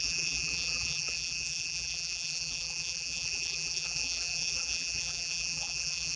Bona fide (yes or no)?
no